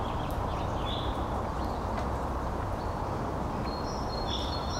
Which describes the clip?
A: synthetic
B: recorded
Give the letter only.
B